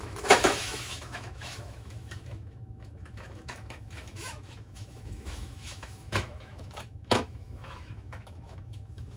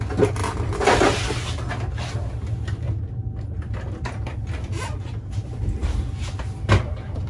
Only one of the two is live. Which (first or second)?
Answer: second